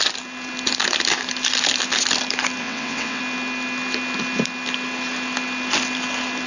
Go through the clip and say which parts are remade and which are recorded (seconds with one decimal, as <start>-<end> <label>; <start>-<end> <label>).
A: 0.0-2.6 recorded; 2.6-3.2 remade; 3.2-6.5 recorded